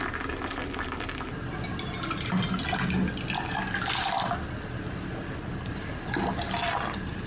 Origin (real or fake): real